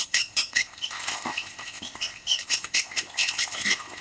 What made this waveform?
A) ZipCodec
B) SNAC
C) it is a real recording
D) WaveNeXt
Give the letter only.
A